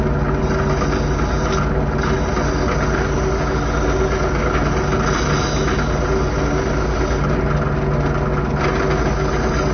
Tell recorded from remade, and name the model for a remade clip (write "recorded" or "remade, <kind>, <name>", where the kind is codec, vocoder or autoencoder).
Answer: recorded